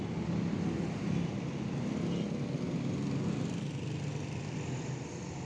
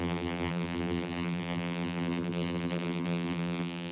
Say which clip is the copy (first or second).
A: second